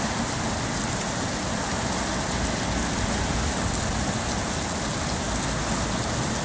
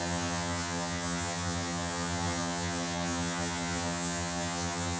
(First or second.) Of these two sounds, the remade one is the second